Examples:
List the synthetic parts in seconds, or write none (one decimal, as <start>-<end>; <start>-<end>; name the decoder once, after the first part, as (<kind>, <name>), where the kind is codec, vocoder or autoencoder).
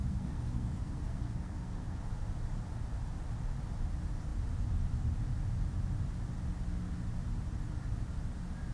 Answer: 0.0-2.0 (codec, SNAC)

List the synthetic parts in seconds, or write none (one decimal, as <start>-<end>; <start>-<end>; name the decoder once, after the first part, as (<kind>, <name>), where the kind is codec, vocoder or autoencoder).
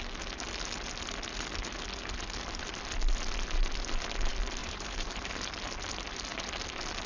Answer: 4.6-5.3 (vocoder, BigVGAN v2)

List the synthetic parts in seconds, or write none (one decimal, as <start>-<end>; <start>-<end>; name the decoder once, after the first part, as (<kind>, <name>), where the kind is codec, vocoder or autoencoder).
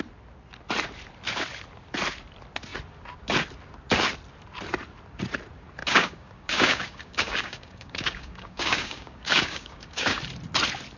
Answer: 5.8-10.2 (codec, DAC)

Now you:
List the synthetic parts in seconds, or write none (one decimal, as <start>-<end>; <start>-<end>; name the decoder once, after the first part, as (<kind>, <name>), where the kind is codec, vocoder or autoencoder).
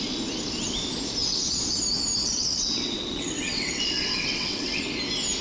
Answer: 1.2-1.8 (vocoder, WaveNeXt); 2.2-4.8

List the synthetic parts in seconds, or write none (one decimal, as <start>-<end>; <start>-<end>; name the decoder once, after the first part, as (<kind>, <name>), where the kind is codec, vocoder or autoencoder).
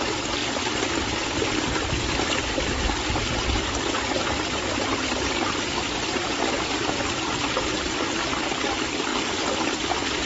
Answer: 0.0-0.4 (vocoder, BigVGAN v2); 5.3-9.1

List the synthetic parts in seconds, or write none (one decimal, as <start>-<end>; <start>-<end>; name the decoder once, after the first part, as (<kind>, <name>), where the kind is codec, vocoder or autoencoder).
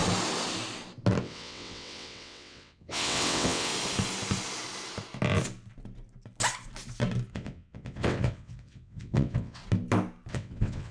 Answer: 1.2-3.7 (vocoder, WaveNeXt); 7.3-9.6; 10.3-10.9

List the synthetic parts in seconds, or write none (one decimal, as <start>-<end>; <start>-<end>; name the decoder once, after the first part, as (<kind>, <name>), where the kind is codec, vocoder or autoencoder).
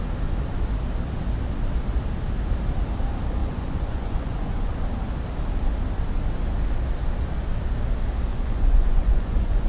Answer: 3.4-4.7 (vocoder, Vocos); 8.3-9.7